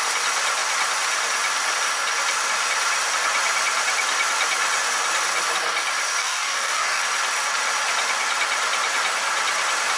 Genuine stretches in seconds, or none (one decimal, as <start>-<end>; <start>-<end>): 0.0-6.2; 7.0-10.0